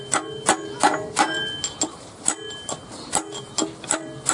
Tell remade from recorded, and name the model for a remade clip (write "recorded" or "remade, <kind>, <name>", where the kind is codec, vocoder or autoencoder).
recorded